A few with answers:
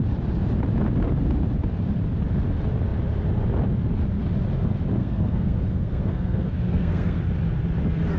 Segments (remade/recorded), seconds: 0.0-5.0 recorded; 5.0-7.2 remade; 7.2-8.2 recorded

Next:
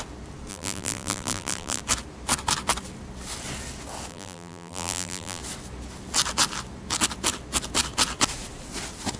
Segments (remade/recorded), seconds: 0.0-0.5 recorded; 0.5-1.8 remade; 1.8-4.1 recorded; 4.1-5.4 remade; 5.4-9.2 recorded

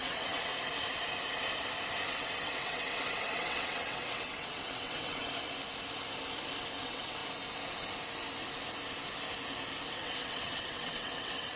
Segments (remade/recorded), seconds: 0.0-0.5 remade; 0.5-2.1 recorded; 2.1-5.2 remade; 5.2-6.8 recorded; 6.8-7.2 remade; 7.2-9.9 recorded; 9.9-11.6 remade

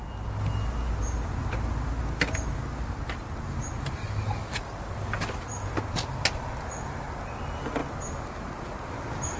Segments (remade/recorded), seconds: 0.0-9.4 recorded

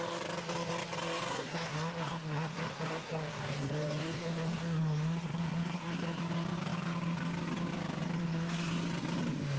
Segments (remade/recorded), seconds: 0.0-1.3 recorded; 1.3-6.2 remade; 6.2-8.2 recorded; 8.2-8.7 remade; 8.7-9.6 recorded

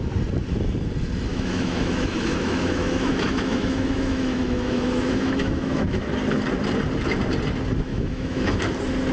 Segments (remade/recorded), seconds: 0.0-1.3 recorded; 1.3-6.1 remade; 6.1-7.9 recorded; 7.9-8.6 remade; 8.6-9.1 recorded

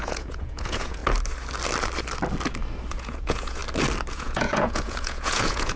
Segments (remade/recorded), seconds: 0.0-1.0 remade; 1.0-2.9 recorded; 2.9-3.6 remade; 3.6-4.1 recorded; 4.1-5.8 remade